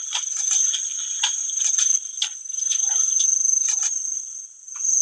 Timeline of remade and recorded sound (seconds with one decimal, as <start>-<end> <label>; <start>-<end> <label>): 0.0-5.0 recorded